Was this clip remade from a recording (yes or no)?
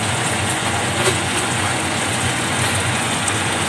yes